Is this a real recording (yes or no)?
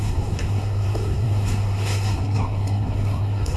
no